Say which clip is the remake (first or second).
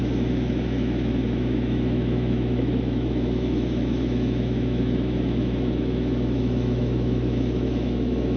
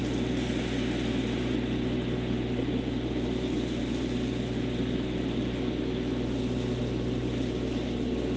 first